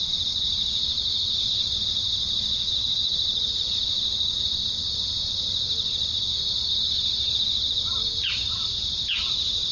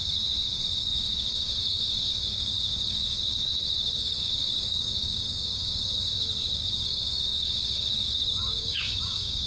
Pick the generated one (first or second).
second